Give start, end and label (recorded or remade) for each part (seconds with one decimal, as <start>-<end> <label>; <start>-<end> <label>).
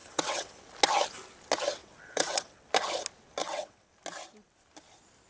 0.0-0.6 remade; 0.6-1.8 recorded; 1.8-2.7 remade; 2.7-3.4 recorded; 3.4-3.9 remade; 3.9-5.3 recorded